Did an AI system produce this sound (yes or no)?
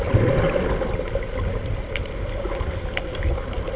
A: no